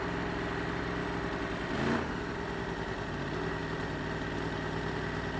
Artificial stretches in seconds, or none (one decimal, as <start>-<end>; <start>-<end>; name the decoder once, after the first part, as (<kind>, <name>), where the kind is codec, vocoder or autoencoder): 1.0-3.2 (vocoder, BigVGAN v2)